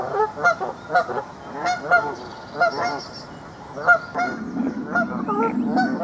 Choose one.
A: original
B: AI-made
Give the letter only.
A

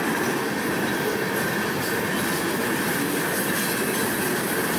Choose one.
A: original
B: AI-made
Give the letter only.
A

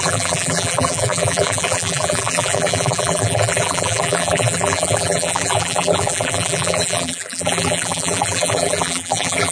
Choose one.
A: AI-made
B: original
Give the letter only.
A